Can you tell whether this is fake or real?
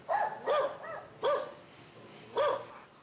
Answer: real